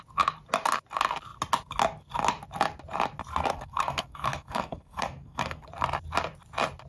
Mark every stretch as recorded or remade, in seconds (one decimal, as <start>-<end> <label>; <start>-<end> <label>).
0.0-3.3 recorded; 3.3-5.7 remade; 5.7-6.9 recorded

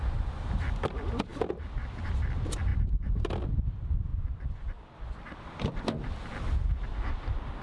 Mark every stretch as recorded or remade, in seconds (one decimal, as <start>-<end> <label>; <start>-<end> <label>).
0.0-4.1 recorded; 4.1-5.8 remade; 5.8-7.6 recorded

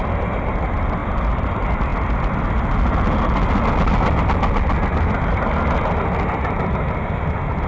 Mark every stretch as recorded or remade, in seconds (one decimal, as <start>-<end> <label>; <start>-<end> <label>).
0.0-7.7 recorded

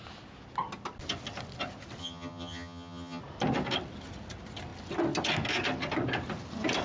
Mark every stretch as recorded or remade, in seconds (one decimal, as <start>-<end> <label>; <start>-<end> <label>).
0.0-2.0 recorded; 2.0-3.2 remade; 3.2-6.8 recorded

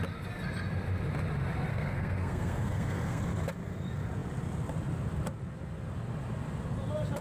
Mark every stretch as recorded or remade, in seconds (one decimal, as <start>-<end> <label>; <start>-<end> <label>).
0.0-1.7 recorded; 1.7-3.2 remade; 3.2-7.2 recorded